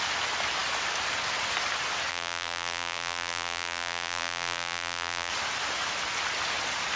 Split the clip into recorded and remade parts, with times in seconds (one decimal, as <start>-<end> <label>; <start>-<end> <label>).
0.0-2.1 recorded; 2.1-5.3 remade; 5.3-7.0 recorded